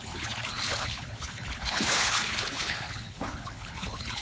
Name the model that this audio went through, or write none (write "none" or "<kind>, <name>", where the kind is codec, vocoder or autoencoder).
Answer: codec, HILCodec